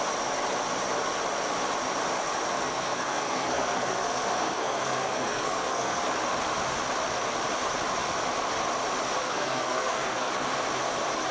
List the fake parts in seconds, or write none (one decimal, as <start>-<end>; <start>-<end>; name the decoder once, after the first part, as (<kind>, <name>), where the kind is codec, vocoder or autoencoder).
2.5-6.0 (codec, SNAC); 9.2-10.3